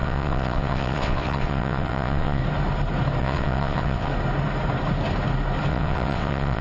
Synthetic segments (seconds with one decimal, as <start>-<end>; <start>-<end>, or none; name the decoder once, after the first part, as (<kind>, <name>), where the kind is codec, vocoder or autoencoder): 0.0-2.4 (vocoder, WaveNeXt); 3.2-4.1; 5.7-6.6